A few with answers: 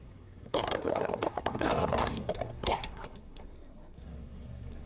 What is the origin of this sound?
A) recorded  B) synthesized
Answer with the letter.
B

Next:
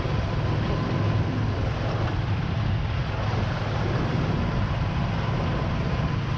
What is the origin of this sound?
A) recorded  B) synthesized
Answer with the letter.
A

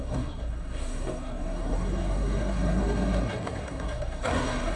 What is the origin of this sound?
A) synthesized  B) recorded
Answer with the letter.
A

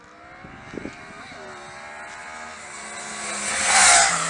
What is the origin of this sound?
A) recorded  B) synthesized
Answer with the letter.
A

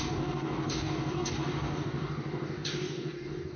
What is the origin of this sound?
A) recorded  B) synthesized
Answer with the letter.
B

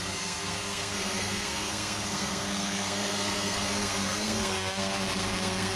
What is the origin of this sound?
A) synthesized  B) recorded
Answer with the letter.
A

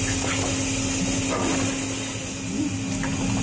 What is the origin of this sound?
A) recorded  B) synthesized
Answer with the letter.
A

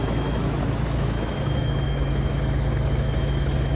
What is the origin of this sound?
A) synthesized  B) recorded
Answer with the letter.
A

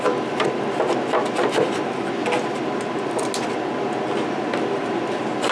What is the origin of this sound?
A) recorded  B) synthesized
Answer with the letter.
A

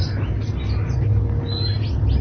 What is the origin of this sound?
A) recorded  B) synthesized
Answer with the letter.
A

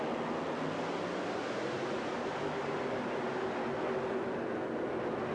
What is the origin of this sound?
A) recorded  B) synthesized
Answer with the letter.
A